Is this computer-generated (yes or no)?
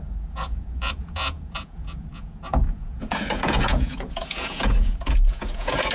yes